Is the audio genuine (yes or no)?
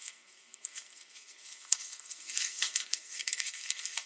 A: no